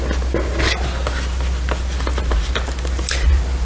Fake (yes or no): no